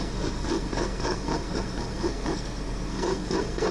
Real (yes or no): no